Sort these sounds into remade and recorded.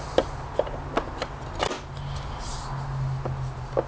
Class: recorded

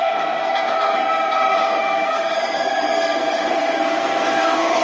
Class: remade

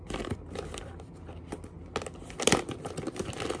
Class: recorded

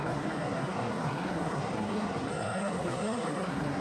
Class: remade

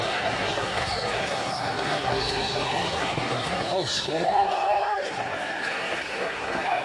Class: remade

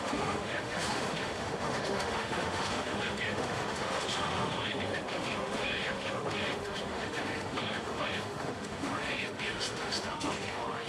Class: remade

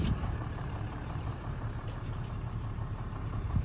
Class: remade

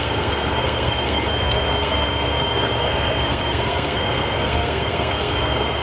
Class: remade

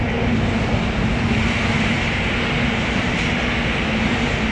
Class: recorded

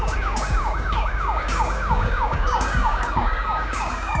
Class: remade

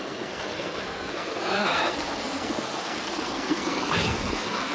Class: remade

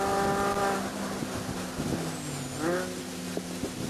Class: recorded